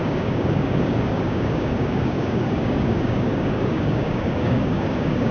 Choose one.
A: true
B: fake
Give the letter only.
B